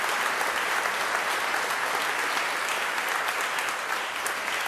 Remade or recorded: recorded